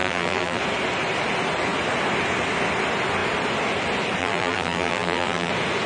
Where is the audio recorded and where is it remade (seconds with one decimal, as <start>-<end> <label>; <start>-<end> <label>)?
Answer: 0.0-0.6 remade; 0.6-4.2 recorded; 4.2-5.5 remade; 5.5-5.9 recorded